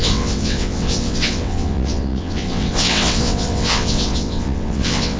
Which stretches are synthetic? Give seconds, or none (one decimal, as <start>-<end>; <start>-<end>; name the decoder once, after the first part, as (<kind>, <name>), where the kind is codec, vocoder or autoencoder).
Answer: 0.0-5.2 (vocoder, WaveNeXt)